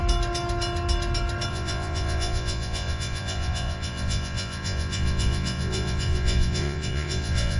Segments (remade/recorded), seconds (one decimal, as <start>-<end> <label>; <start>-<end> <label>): 0.0-1.5 recorded; 1.5-7.6 remade